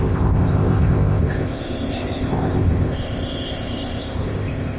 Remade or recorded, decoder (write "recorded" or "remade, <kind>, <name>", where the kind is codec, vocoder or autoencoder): remade, codec, ZipCodec